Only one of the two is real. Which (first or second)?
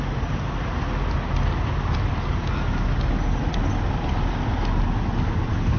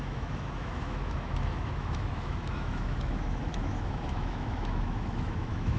first